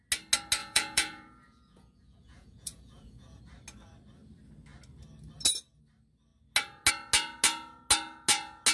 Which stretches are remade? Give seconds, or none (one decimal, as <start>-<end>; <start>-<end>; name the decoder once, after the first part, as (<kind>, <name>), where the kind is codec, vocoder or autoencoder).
0.6-3.4 (vocoder, Vocos)